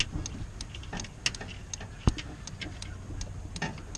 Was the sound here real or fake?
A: real